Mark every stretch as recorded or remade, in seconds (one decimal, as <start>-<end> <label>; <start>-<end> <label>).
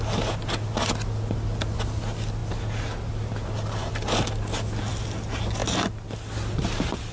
0.0-7.1 recorded